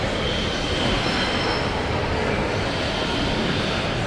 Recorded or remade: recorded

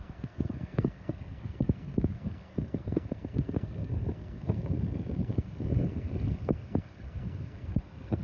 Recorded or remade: remade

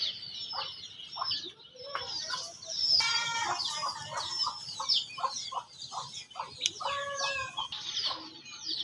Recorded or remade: recorded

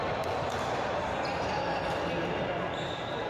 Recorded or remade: remade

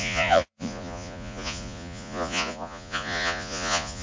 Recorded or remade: remade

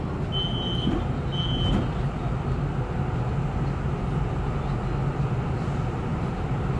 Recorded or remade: recorded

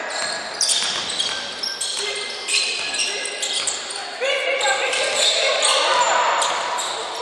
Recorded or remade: recorded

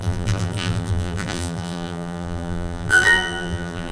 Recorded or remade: remade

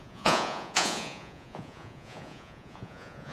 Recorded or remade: remade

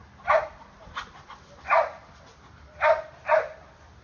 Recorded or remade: recorded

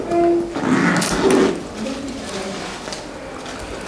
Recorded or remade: recorded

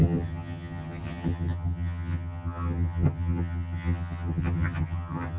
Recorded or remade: remade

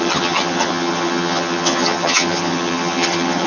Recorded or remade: remade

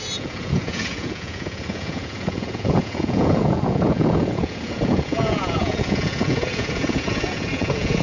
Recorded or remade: remade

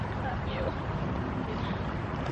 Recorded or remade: remade